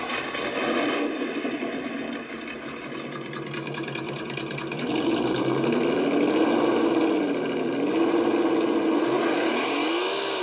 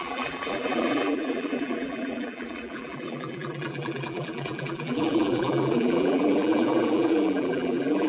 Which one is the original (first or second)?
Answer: first